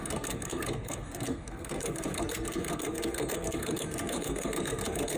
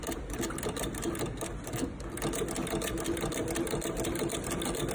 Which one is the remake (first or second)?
first